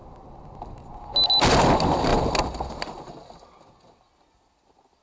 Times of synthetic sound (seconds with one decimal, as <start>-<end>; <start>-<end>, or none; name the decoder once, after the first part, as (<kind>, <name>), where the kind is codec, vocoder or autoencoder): none